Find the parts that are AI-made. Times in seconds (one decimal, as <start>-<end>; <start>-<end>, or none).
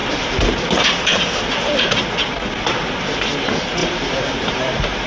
0.0-2.0; 3.8-5.1